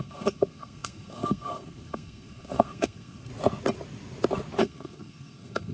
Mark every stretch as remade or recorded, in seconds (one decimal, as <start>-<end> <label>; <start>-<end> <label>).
0.0-3.3 remade; 3.3-4.6 recorded; 4.6-5.7 remade